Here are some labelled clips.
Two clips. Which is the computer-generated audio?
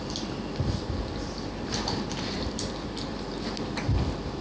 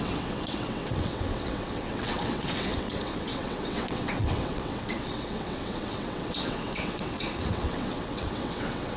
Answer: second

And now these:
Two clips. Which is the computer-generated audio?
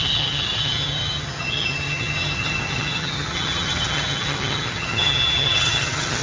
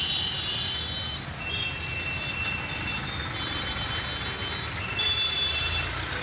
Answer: first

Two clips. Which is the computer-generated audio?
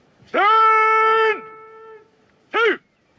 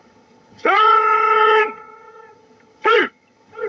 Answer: second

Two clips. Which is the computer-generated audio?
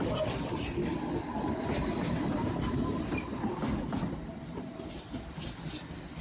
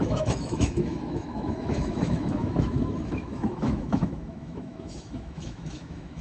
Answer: second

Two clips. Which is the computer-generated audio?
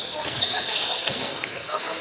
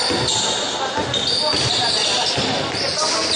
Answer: first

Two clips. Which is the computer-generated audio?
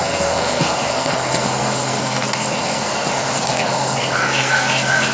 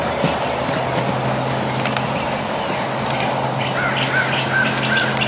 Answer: first